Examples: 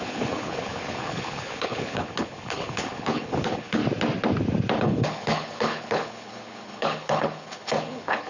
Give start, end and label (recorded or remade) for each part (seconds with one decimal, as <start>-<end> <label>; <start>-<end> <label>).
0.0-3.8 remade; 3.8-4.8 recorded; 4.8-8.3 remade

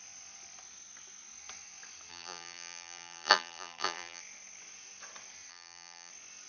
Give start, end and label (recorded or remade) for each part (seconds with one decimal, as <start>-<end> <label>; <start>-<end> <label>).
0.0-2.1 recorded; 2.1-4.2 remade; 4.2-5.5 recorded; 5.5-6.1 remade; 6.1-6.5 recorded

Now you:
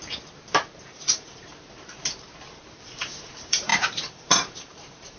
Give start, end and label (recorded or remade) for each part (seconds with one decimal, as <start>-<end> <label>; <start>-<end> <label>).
0.0-0.8 recorded; 0.8-1.5 remade; 1.5-3.0 recorded; 3.0-5.2 remade

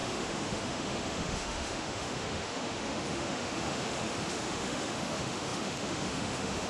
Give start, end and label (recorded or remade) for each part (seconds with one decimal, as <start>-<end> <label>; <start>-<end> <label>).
0.0-6.7 remade